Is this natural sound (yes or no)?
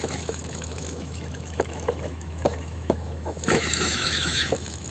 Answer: no